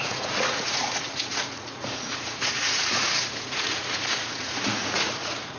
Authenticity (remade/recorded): remade